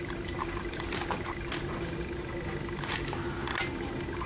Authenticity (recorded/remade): recorded